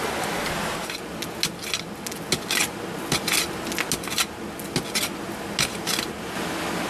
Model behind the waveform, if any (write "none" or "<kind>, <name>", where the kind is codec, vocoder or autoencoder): none